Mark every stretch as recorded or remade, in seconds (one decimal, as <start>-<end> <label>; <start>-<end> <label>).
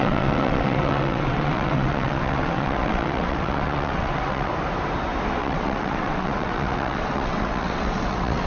0.0-4.5 remade; 4.5-5.4 recorded; 5.4-8.5 remade